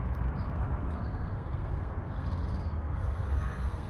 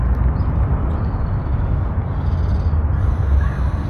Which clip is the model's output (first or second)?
first